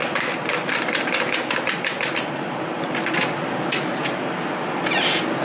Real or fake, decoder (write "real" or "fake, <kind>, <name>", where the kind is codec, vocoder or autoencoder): real